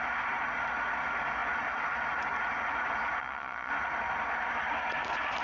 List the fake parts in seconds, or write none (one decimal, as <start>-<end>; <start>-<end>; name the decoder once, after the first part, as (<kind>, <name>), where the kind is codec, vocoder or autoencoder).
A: 3.2-3.7 (vocoder, Vocos)